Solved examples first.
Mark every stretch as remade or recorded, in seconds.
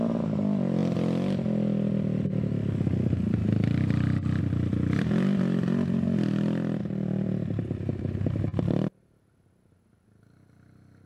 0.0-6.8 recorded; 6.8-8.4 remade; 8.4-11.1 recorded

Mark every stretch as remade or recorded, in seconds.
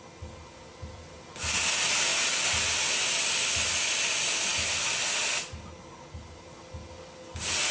0.0-7.7 recorded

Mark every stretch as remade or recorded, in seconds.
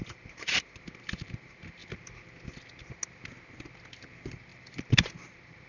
0.0-1.8 remade; 1.8-3.9 recorded; 3.9-5.7 remade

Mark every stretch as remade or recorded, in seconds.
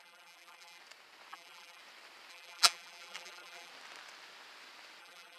0.0-0.8 remade; 0.8-1.3 recorded; 1.3-1.8 remade; 1.8-2.3 recorded; 2.3-3.7 remade; 3.7-5.0 recorded; 5.0-5.4 remade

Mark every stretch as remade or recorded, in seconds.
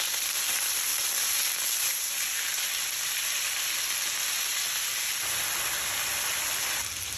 0.0-0.9 recorded; 0.9-2.7 remade; 2.7-4.5 recorded; 4.5-5.4 remade; 5.4-7.2 recorded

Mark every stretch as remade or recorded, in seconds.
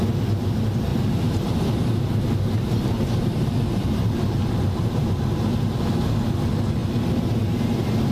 0.0-0.9 recorded; 0.9-5.3 remade; 5.3-8.1 recorded